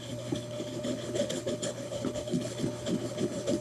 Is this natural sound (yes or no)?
no